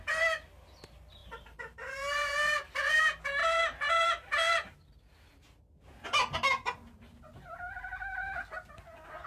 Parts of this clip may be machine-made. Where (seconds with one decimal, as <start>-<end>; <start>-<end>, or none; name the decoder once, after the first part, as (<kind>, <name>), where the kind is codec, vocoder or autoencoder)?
1.2-3.0 (vocoder, BigVGAN v2); 3.4-5.0